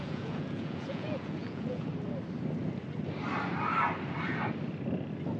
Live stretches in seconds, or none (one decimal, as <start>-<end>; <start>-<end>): 1.9-5.4